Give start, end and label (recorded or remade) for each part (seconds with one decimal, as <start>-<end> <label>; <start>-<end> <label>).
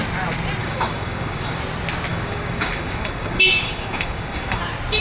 0.0-0.6 recorded; 0.6-1.6 remade; 1.6-2.1 recorded; 2.1-4.6 remade; 4.6-5.0 recorded